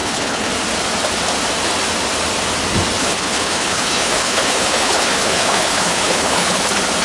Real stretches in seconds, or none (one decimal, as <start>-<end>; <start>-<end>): 0.5-3.0; 6.6-7.0